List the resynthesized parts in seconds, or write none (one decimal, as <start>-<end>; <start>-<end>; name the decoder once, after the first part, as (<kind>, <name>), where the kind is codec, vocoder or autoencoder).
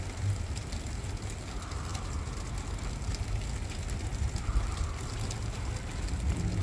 4.1-6.6 (vocoder, BigVGAN v2)